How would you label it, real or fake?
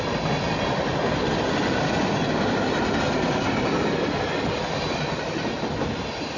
real